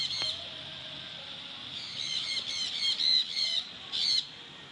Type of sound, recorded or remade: remade